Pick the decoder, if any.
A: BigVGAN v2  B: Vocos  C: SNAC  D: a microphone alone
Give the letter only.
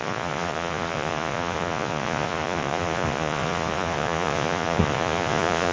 B